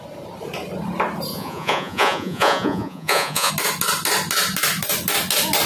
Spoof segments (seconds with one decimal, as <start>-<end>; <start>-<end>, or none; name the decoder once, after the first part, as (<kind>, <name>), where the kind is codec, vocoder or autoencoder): 1.3-3.5 (vocoder, Vocos)